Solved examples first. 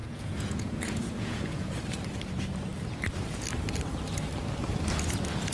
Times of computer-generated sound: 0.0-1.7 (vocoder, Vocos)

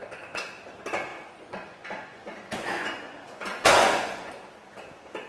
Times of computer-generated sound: 0.0-0.5 (vocoder, Vocos); 1.1-4.3

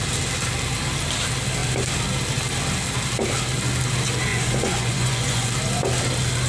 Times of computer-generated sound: 4.3-5.5 (vocoder, Vocos)

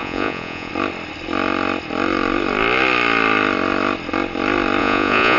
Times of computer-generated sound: 0.0-0.7 (vocoder, Vocos); 4.8-5.4

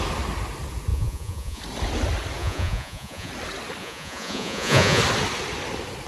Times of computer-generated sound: 0.9-1.6 (vocoder, Vocos); 2.4-3.3; 3.8-5.0